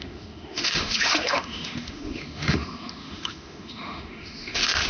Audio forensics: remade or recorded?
remade